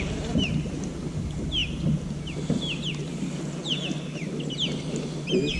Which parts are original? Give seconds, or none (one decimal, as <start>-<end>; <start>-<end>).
0.0-5.6